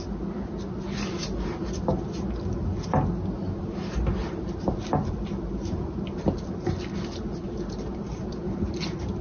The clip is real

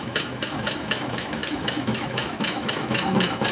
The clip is fake